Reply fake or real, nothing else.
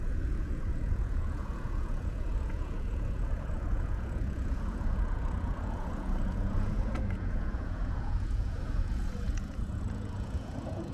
fake